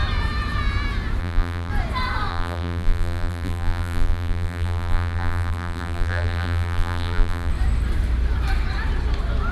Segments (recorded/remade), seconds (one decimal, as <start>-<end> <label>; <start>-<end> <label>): 0.0-1.2 recorded; 1.2-1.7 remade; 1.7-2.3 recorded; 2.3-7.5 remade; 7.5-9.5 recorded